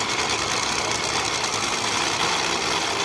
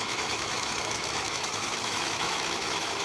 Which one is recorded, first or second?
first